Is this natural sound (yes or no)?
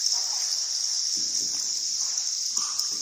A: yes